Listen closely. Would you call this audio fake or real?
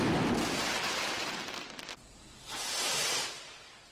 fake